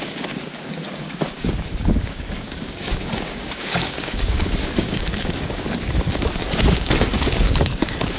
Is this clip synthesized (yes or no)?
yes